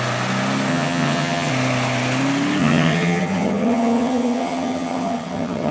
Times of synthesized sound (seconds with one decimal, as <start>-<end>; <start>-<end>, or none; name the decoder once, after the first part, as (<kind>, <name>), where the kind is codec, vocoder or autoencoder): 0.7-1.5 (vocoder, HiFi-GAN); 2.6-5.7